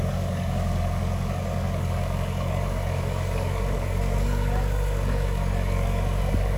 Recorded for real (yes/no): no